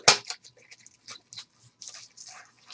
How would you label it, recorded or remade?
recorded